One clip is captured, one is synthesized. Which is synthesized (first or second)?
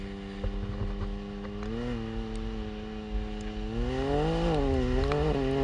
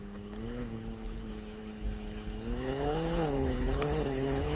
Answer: second